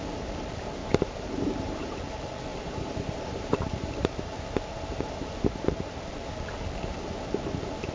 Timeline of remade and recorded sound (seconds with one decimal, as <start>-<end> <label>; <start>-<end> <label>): 0.0-0.8 recorded; 0.8-1.9 remade; 1.9-2.5 recorded; 2.5-6.1 remade; 6.1-7.9 recorded